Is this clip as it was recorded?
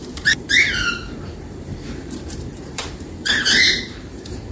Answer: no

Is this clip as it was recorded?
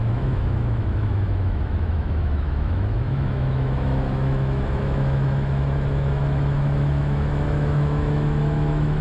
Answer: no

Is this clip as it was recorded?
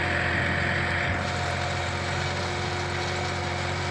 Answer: yes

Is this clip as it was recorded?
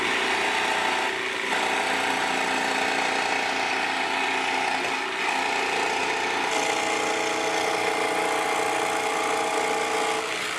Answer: yes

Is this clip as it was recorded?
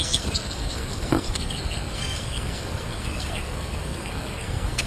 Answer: no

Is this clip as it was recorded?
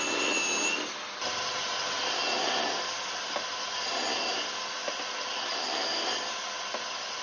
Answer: yes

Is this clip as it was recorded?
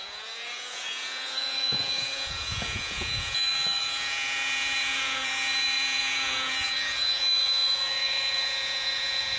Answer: no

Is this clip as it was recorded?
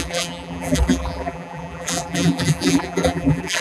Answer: no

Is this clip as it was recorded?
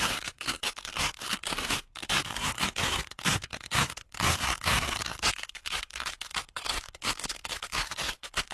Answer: no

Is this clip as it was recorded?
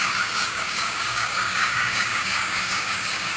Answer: no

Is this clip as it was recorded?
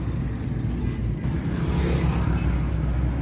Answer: yes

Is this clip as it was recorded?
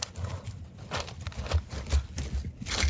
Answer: yes